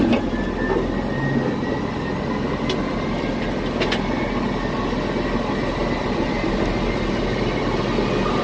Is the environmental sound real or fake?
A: real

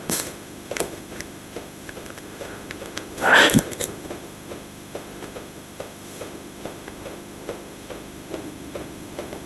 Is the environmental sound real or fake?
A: fake